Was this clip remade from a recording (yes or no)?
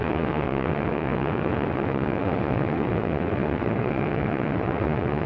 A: yes